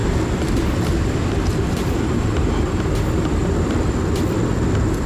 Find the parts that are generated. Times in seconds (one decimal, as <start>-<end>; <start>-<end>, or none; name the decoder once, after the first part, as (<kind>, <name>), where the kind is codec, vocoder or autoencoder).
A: 0.0-2.8 (vocoder, BigVGAN v2); 3.4-4.5